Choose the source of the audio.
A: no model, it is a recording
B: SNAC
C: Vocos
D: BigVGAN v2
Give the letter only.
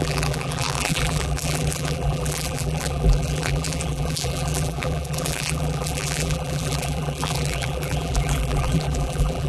D